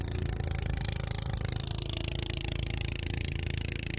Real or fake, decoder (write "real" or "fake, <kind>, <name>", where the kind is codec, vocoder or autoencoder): real